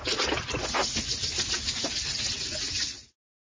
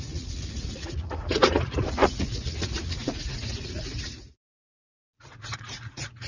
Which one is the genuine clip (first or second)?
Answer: first